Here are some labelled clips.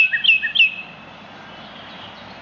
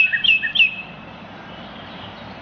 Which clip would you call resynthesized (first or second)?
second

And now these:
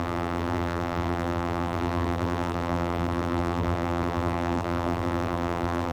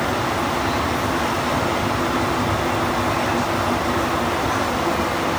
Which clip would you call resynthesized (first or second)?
first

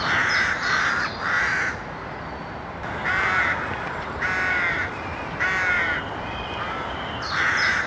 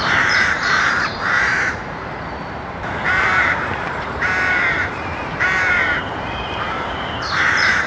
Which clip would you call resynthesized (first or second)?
second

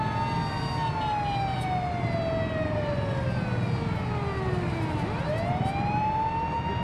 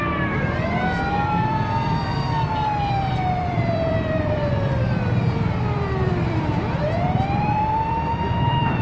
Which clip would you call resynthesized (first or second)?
second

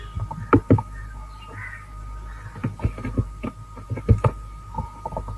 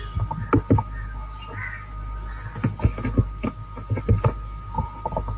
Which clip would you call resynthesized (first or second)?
first